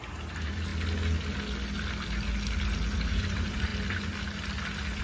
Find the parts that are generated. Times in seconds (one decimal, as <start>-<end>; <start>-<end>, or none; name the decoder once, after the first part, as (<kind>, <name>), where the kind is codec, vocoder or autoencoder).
0.0-0.7 (vocoder, BigVGAN v2); 3.1-3.7